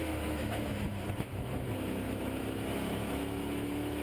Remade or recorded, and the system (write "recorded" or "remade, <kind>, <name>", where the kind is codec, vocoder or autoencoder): remade, autoencoder, DAC-VAE